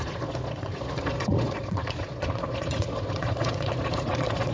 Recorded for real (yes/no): no